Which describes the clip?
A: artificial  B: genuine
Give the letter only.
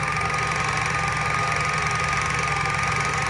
A